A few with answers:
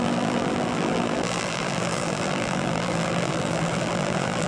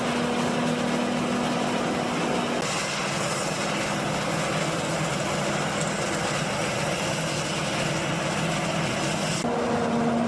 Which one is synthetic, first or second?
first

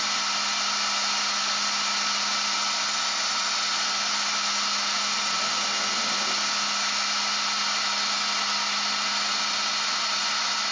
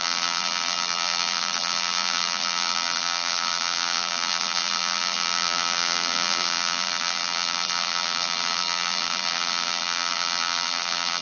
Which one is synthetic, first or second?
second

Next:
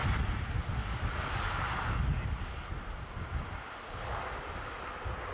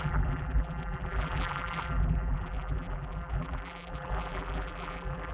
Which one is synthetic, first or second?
second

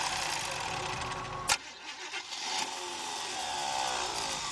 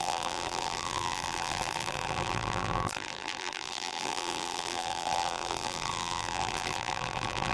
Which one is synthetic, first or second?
second